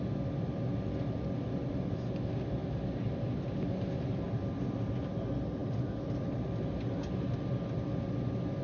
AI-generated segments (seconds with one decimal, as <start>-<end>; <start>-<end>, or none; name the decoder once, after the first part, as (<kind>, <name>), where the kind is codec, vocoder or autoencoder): none